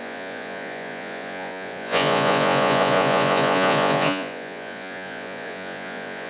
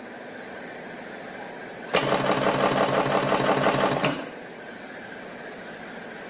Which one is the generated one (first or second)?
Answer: first